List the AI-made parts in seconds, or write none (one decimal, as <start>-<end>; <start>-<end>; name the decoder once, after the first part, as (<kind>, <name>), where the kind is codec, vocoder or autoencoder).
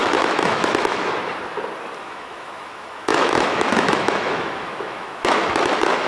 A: 0.0-1.2 (autoencoder, DAC-VAE); 2.0-6.1